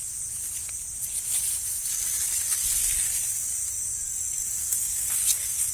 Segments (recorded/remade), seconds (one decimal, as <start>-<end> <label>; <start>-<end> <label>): 0.0-4.6 recorded; 4.6-5.7 remade